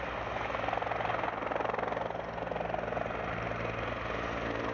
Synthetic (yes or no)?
no